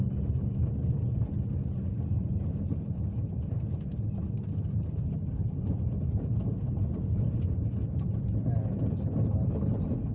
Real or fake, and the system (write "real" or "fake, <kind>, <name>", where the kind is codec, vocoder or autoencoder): real